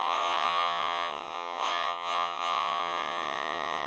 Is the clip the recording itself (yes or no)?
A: no